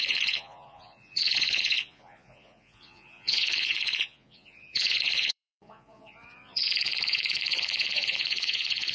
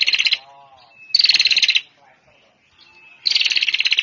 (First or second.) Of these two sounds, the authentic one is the second